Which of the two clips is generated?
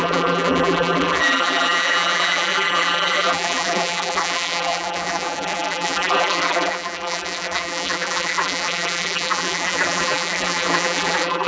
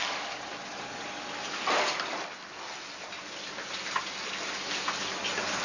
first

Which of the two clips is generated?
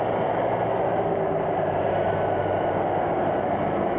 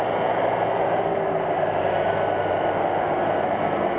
first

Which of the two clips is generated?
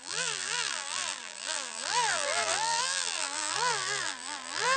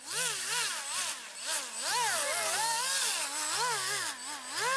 first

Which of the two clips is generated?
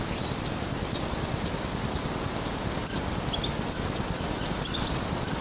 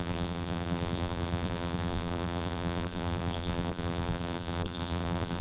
second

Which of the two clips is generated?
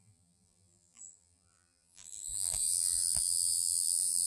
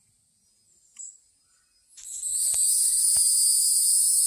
first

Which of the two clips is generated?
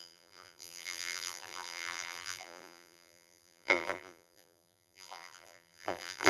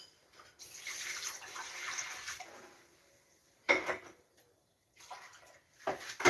first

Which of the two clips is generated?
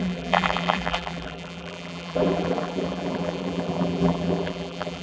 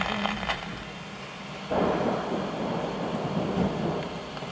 first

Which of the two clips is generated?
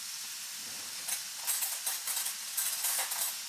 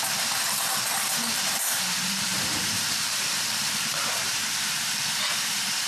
second